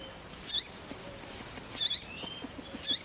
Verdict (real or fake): fake